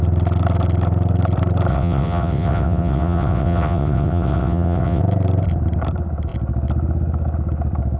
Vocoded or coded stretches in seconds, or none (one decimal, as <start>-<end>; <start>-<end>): 1.7-5.0